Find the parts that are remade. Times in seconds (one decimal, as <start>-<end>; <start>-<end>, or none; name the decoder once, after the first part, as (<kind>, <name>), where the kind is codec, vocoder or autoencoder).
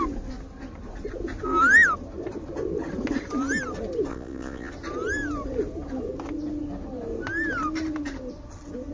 4.1-4.7 (vocoder, Vocos)